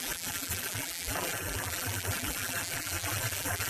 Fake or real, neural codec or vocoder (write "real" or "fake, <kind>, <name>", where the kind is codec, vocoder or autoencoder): fake, vocoder, BigVGAN v2